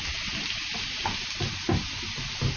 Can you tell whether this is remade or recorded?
recorded